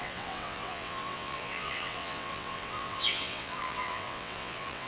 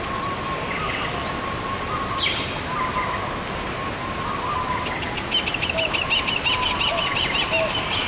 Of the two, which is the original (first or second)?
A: second